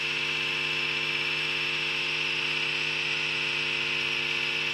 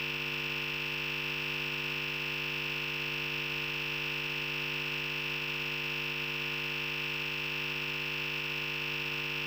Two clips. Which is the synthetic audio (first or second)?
first